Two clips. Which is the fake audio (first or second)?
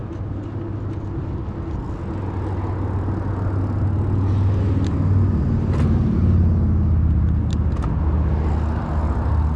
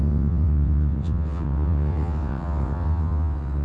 second